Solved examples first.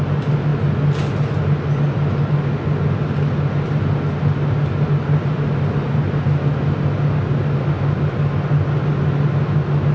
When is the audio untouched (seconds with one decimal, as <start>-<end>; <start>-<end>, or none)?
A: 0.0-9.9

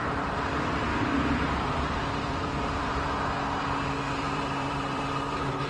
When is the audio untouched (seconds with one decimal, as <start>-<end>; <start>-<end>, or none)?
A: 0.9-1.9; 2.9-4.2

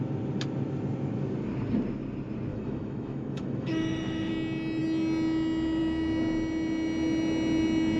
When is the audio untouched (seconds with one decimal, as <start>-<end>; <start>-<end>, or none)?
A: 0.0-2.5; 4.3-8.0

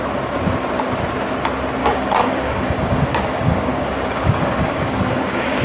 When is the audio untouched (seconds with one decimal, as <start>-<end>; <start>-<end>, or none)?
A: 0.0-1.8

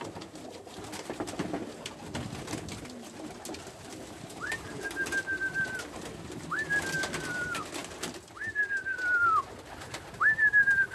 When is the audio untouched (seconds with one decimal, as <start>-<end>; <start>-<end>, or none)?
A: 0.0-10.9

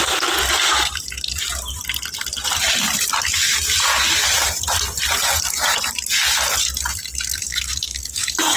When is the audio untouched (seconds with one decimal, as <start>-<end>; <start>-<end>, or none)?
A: 0.0-7.3

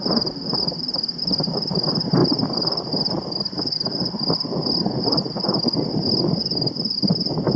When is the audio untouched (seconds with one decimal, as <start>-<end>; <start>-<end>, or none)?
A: 0.0-7.6

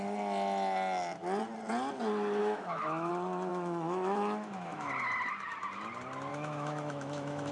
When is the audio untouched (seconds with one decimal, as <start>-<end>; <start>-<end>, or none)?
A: 0.0-2.4; 3.1-3.5; 4.9-6.3